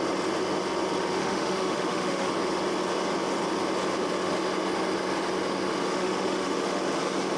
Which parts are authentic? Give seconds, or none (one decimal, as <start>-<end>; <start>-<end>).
0.0-1.2; 2.3-5.9; 6.8-7.4